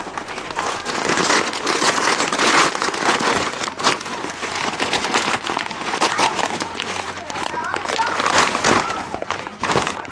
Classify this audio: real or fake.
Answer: fake